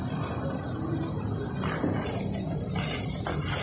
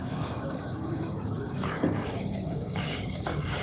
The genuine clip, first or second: first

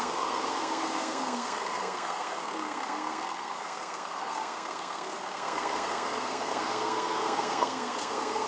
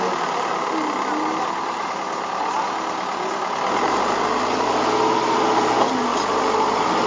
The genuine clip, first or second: second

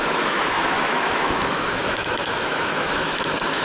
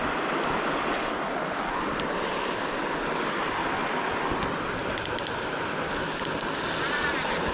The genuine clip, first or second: second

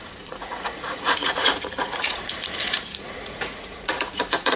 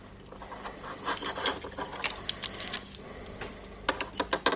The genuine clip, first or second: second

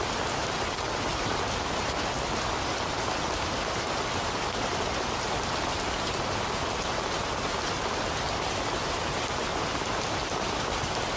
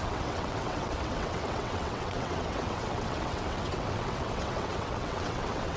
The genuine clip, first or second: first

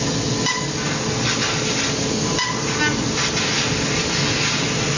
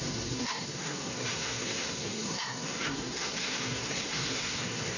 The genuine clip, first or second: first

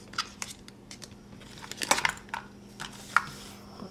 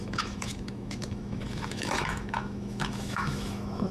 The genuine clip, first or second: first